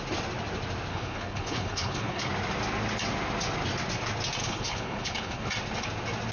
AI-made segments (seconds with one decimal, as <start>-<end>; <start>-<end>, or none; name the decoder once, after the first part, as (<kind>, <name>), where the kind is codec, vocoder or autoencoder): 0.9-2.3 (codec, HILCodec); 4.4-5.5